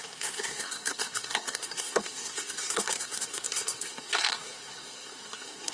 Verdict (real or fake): fake